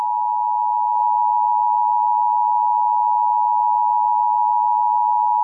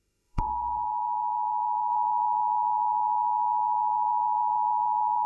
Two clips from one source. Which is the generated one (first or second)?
second